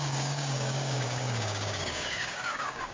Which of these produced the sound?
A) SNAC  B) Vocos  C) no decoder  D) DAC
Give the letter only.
D